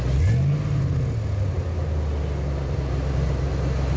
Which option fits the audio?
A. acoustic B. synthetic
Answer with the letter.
A